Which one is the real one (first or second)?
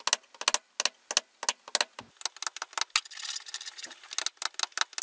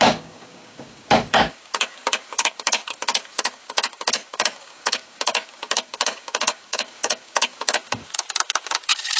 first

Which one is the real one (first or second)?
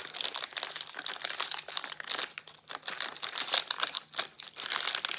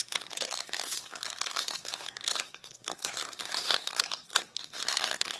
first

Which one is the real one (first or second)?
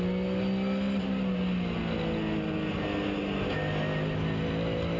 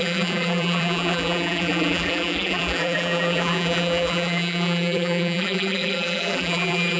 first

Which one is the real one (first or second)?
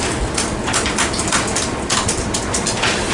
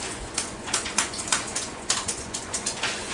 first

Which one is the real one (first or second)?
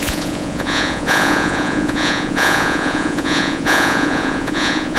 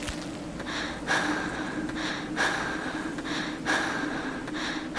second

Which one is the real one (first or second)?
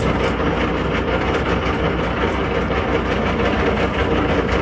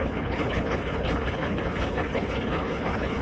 first